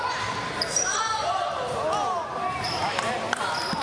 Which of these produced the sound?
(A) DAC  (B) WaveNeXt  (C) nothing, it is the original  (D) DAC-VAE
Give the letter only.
C